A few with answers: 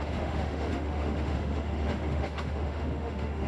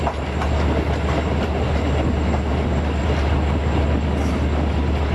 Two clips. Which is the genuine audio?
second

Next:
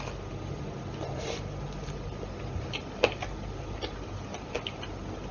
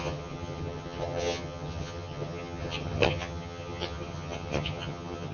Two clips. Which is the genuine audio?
first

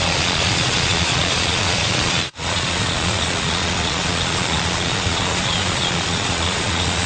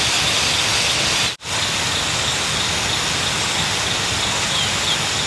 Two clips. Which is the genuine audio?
second